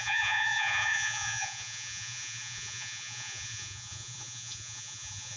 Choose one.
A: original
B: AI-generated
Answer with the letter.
B